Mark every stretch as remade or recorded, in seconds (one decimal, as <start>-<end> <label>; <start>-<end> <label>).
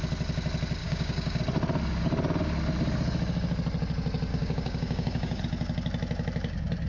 0.0-0.8 recorded; 0.8-1.4 remade; 1.4-4.3 recorded; 4.3-5.4 remade; 5.4-6.9 recorded